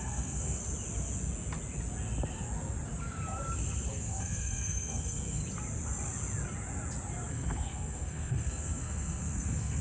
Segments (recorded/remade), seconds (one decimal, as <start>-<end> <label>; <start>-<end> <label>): 0.0-0.6 remade; 0.6-3.9 recorded; 3.9-5.4 remade; 5.4-7.3 recorded; 7.3-9.8 remade